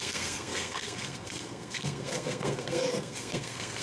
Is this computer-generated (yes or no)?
yes